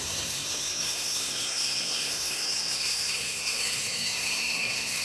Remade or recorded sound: remade